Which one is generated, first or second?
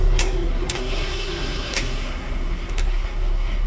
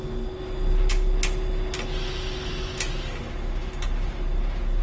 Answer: first